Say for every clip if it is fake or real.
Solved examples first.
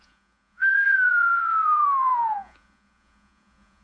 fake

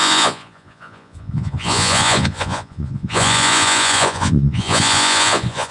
fake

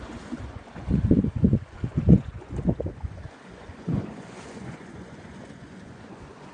fake